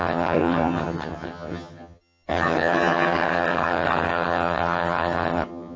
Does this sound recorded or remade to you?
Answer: remade